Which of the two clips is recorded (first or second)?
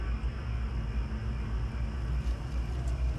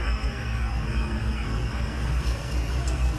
first